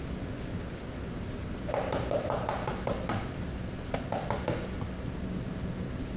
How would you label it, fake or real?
real